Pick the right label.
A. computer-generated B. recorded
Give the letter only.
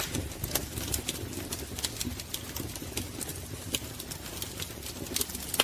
B